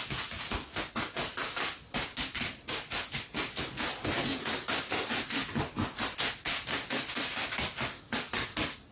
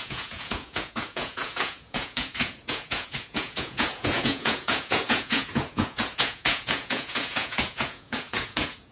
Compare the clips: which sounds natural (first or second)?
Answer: first